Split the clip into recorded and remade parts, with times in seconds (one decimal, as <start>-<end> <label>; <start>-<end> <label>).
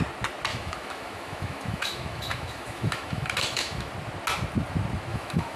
0.0-0.5 recorded; 0.5-3.9 remade; 3.9-5.1 recorded; 5.1-5.6 remade